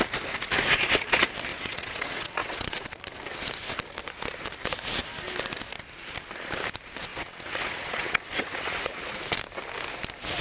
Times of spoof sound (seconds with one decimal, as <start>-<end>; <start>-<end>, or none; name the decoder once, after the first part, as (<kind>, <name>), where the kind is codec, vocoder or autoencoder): 1.5-3.0 (vocoder, WaveNeXt); 7.1-9.2